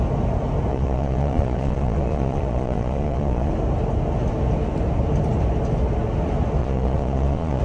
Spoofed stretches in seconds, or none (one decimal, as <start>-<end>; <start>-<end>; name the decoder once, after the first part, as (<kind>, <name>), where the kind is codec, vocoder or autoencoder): 0.7-3.5 (vocoder, Vocos); 6.6-7.6